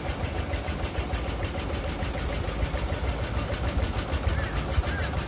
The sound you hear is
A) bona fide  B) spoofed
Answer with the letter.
A